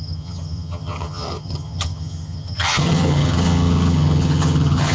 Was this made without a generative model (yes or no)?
no